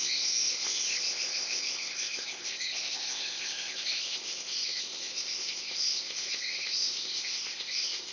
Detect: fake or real fake